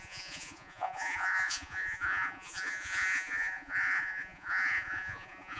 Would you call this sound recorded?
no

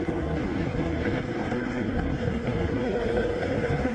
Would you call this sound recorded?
no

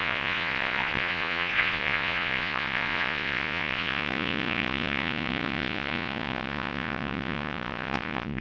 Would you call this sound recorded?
no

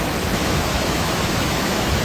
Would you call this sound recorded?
no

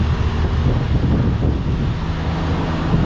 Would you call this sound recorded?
yes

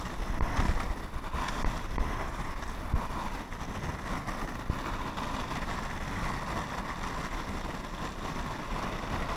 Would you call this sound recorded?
yes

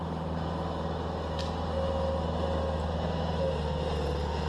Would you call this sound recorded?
yes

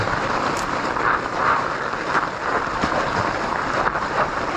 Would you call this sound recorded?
no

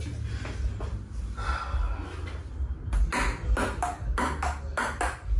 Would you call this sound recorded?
yes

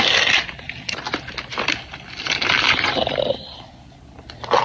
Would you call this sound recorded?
yes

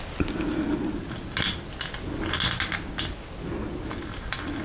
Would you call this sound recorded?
yes